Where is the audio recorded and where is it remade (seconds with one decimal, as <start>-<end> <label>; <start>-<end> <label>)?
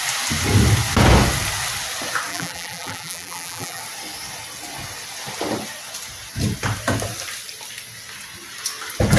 0.0-2.3 recorded; 2.3-3.8 remade; 3.8-9.2 recorded